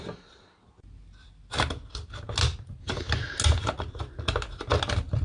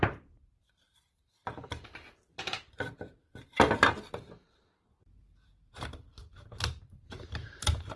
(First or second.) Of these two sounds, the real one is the first